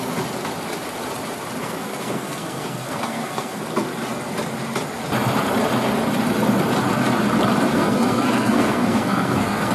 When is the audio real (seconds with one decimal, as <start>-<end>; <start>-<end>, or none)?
0.0-1.6; 3.6-7.7